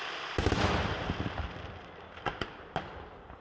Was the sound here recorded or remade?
remade